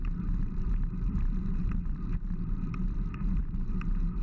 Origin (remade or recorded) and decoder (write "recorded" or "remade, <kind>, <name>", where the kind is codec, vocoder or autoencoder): remade, vocoder, BigVGAN v2